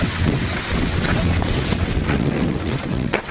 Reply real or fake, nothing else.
fake